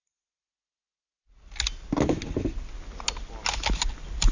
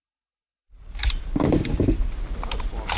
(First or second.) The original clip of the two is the first